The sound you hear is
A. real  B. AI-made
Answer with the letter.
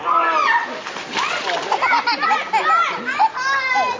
A